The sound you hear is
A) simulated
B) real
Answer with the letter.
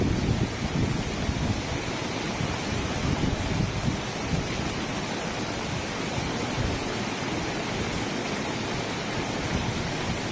B